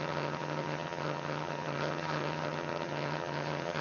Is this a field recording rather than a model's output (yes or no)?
no